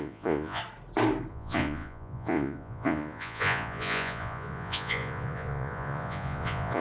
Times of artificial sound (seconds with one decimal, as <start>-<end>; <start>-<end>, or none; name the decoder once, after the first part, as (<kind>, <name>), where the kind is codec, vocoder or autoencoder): 0.0-0.6 (vocoder, Vocos); 1.3-6.8